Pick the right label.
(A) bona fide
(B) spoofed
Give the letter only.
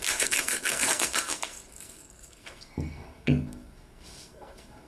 B